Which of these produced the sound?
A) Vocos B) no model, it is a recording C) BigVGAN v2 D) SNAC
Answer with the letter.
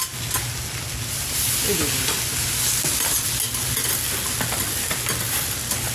B